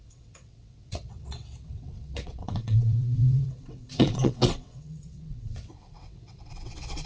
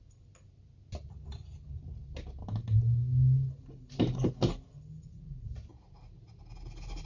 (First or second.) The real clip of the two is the second